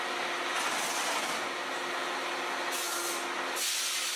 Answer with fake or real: real